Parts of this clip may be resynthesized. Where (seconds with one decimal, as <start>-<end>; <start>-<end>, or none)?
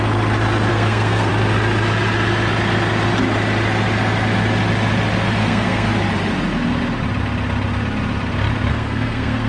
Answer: 0.7-1.3; 5.4-5.9; 8.7-9.5